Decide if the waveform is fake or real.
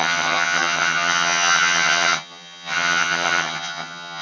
fake